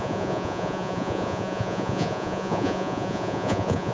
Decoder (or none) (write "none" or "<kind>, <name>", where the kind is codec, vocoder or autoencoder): vocoder, Vocos